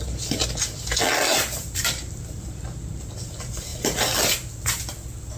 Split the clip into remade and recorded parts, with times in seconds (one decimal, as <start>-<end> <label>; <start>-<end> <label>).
0.0-1.3 recorded; 1.3-2.9 remade; 2.9-5.4 recorded